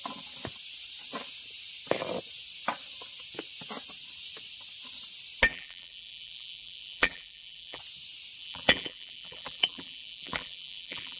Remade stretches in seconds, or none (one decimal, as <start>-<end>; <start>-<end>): 5.5-7.8; 8.4-11.2